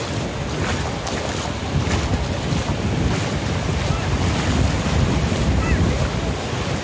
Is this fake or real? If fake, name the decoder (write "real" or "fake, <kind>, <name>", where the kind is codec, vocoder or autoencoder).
real